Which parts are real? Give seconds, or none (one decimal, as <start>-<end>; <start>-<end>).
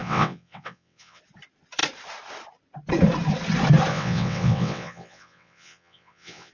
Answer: 1.2-3.9